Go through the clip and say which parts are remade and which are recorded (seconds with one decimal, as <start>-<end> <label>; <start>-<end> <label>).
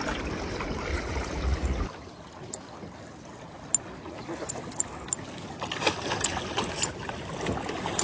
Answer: 0.0-0.9 recorded; 0.9-1.8 remade; 1.8-8.0 recorded